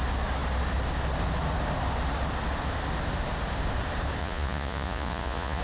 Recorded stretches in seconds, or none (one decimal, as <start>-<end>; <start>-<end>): 0.0-4.2